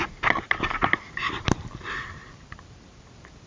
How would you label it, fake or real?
real